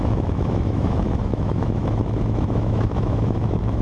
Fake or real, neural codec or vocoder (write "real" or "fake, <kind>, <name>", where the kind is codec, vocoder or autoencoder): fake, autoencoder, DAC-VAE